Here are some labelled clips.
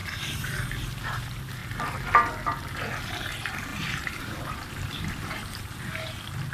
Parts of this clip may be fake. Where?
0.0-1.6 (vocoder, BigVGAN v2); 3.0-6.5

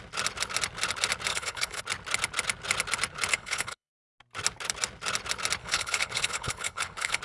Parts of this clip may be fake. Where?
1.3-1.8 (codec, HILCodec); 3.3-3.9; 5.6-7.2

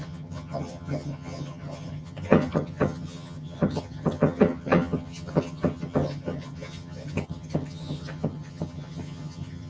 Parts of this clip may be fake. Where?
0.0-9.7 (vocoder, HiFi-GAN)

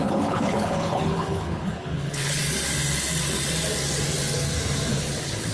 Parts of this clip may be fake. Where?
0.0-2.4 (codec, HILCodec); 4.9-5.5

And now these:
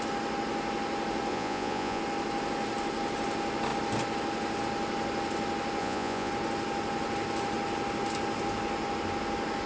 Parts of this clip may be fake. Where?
1.3-2.0 (vocoder, Vocos); 5.8-6.3